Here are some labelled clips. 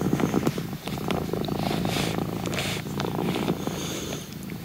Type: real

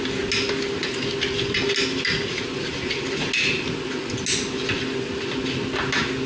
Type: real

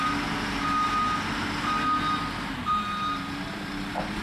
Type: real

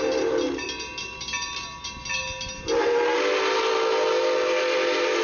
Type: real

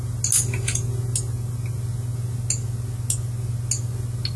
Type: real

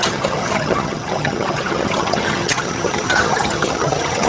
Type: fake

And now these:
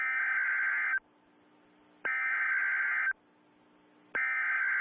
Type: real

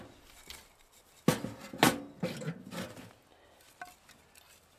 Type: real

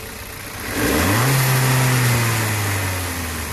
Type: real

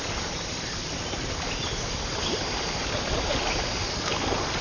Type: real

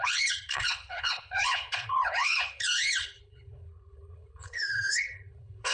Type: fake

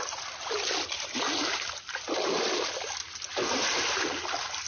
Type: real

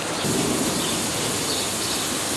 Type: real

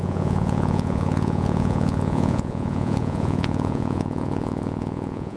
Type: fake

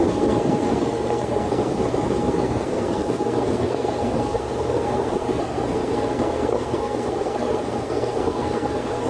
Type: fake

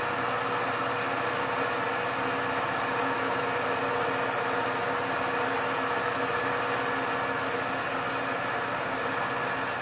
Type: real